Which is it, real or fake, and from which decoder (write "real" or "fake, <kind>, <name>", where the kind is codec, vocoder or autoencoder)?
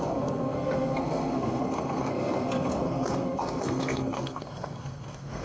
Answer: fake, codec, SNAC